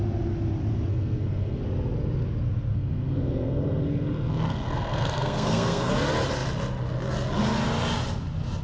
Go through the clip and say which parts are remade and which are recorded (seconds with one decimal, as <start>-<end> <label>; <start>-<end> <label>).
0.0-0.9 recorded; 0.9-1.6 remade; 1.6-2.7 recorded; 2.7-5.9 remade; 5.9-8.6 recorded